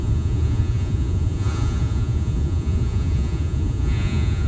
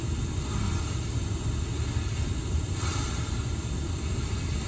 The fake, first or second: first